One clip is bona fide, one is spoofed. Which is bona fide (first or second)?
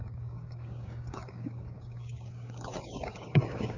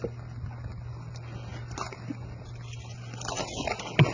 second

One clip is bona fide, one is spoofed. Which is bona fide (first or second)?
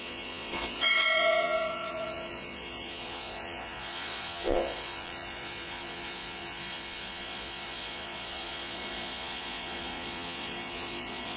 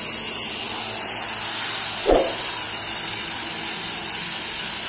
second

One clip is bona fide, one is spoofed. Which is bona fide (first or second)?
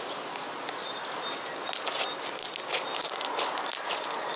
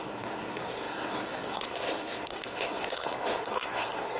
first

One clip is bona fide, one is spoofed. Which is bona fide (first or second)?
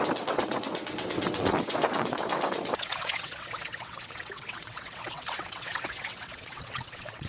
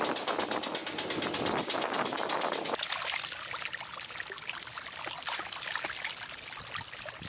second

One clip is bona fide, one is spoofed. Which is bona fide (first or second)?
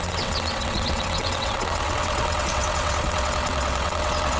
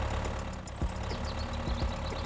second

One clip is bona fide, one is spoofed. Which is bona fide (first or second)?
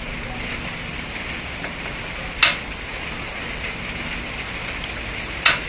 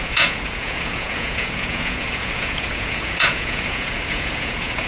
first